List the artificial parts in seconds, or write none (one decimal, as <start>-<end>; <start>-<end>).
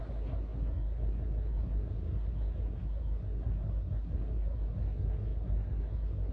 0.0-6.3